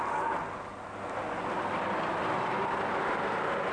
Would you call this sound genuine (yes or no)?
yes